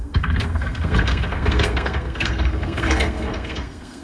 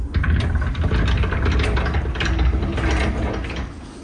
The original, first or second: second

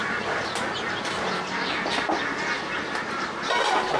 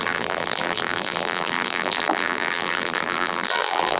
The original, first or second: first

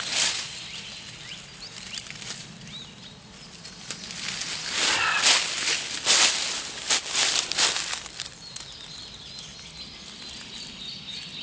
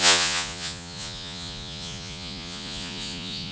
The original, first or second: first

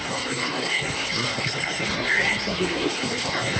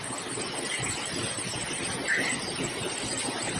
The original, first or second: second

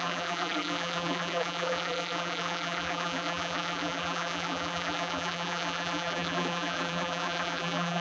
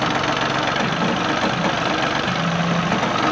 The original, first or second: second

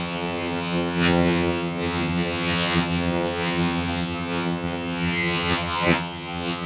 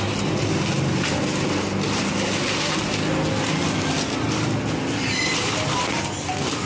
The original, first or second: second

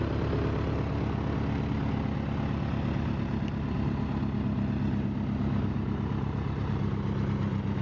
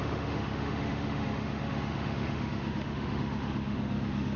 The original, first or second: first